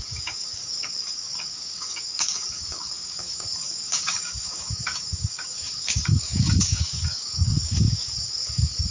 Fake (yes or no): yes